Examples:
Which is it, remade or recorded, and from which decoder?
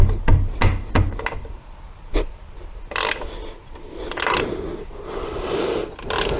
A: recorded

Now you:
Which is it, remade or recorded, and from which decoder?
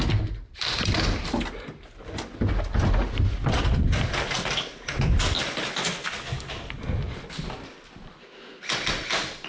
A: recorded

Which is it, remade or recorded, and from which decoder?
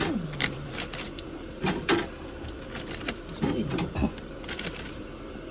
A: remade, vocoder, BigVGAN v2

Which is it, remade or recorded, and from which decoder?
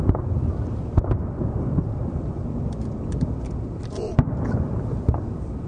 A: remade, vocoder, BigVGAN v2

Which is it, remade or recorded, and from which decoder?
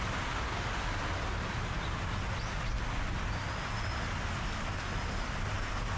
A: recorded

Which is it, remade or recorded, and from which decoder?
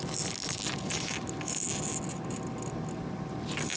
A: recorded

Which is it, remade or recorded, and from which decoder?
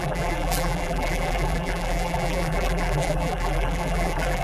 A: remade, vocoder, BigVGAN v2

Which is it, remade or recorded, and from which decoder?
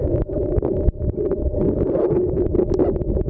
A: remade, vocoder, BigVGAN v2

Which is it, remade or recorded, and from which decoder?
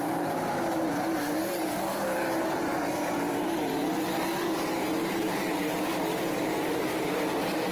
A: remade, vocoder, BigVGAN v2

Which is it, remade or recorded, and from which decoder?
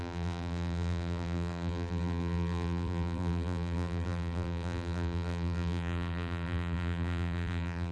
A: remade, vocoder, BigVGAN v2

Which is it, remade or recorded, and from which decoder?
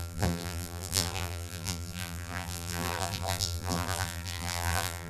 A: remade, vocoder, BigVGAN v2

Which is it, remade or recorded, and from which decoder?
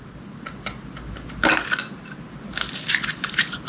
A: recorded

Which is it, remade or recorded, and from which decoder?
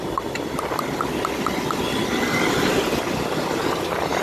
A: recorded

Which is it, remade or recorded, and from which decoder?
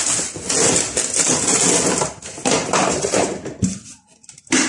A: recorded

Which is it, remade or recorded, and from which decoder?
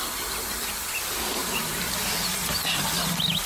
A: recorded